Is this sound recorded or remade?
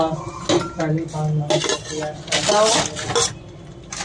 recorded